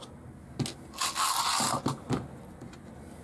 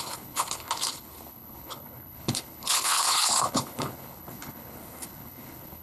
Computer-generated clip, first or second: second